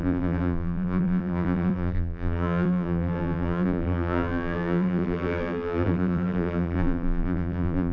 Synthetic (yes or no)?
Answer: yes